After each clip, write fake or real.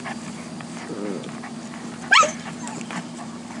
real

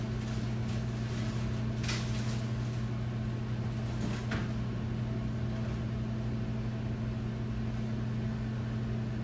real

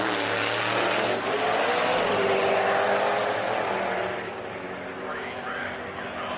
real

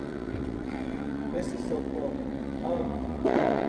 fake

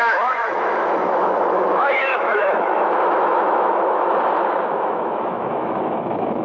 fake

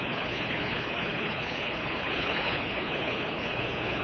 fake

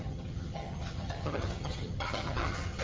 fake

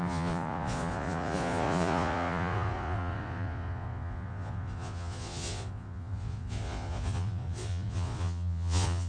fake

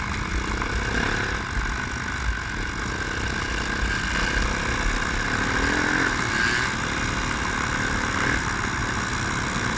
real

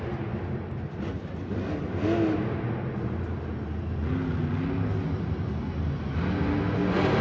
real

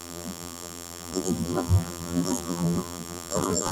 fake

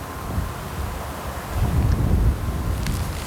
real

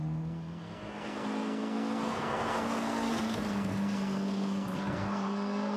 fake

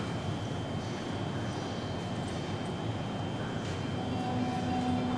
real